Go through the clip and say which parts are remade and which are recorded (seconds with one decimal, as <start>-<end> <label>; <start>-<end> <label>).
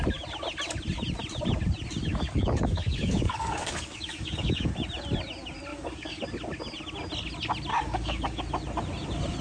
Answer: 0.0-2.1 recorded; 2.1-4.7 remade; 4.7-5.7 recorded; 5.7-6.2 remade; 6.2-7.7 recorded; 7.7-8.4 remade; 8.4-9.4 recorded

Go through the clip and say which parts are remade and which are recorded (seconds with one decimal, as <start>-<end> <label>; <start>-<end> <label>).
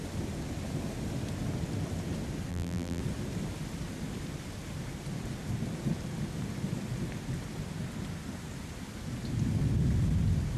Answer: 0.0-2.5 recorded; 2.5-3.0 remade; 3.0-10.6 recorded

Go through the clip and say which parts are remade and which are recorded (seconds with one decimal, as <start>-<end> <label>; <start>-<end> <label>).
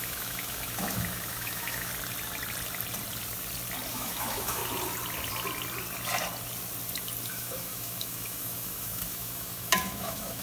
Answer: 0.0-1.9 remade; 1.9-3.9 recorded; 3.9-4.6 remade; 4.6-7.3 recorded; 7.3-10.4 remade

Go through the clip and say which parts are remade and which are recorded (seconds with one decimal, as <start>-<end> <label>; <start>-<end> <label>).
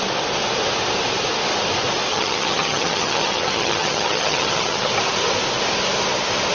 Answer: 0.0-2.1 recorded; 2.1-4.9 remade; 4.9-6.5 recorded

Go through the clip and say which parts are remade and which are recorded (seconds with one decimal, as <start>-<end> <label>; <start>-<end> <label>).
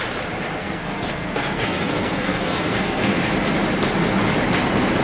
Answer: 0.0-0.6 recorded; 0.6-3.2 remade; 3.2-5.0 recorded